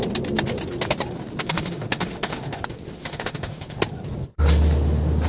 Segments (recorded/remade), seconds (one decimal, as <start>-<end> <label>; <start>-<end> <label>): 0.0-1.4 recorded; 1.4-2.6 remade; 2.6-3.0 recorded; 3.0-3.8 remade; 3.8-5.3 recorded